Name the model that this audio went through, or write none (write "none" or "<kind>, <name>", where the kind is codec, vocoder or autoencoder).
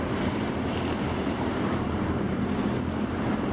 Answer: vocoder, BigVGAN v2